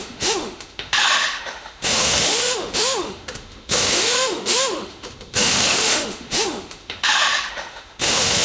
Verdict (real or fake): fake